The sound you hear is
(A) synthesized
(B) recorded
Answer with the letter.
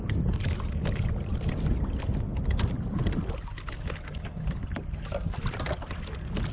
B